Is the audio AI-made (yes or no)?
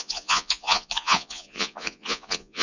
yes